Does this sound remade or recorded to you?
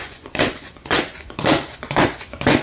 remade